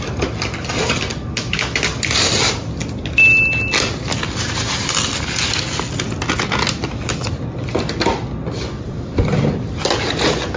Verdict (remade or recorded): recorded